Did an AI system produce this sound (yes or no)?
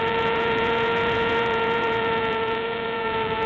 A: yes